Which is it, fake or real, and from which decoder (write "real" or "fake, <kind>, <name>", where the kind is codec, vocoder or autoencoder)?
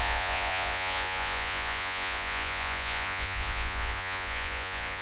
fake, vocoder, Vocos